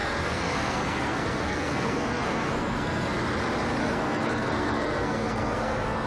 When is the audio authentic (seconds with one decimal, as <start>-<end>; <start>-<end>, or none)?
3.1-3.8